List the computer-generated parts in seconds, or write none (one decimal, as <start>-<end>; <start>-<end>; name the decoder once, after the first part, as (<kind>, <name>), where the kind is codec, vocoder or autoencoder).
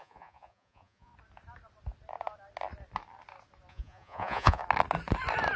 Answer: 0.0-1.1 (vocoder, Vocos); 3.7-4.6